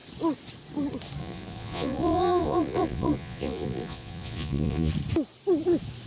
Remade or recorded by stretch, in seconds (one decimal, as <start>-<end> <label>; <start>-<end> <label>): 0.0-1.2 recorded; 1.2-4.9 remade; 4.9-6.1 recorded